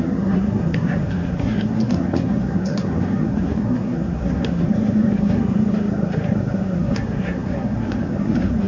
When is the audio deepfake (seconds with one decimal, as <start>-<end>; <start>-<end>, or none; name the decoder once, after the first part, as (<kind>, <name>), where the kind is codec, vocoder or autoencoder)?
0.0-8.7 (codec, SNAC)